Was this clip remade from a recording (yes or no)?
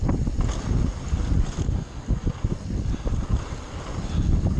no